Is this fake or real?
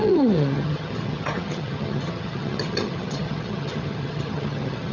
fake